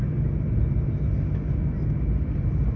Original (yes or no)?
yes